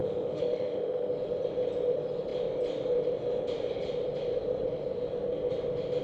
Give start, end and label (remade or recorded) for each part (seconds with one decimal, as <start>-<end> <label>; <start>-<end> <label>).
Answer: 0.0-1.1 remade; 1.1-6.0 recorded